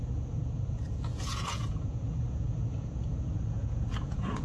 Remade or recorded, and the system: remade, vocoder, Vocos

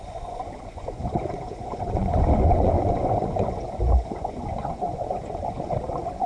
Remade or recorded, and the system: remade, vocoder, Vocos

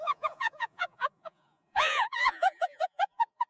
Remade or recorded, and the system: remade, vocoder, Vocos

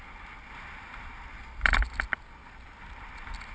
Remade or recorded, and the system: recorded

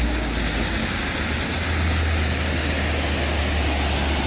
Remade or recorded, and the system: recorded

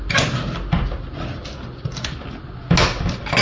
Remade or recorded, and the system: recorded